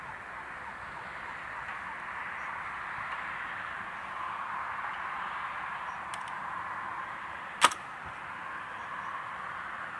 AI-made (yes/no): no